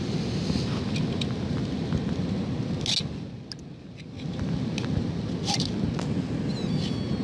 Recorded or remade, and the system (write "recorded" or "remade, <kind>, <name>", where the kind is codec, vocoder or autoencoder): recorded